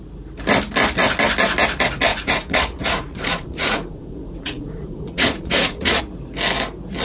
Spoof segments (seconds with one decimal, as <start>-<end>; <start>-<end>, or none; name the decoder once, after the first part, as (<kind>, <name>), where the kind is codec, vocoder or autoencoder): 2.1-6.0 (vocoder, Vocos)